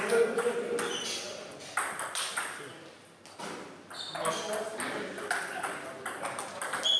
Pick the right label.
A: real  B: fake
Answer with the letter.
A